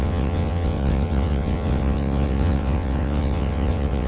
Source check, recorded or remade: remade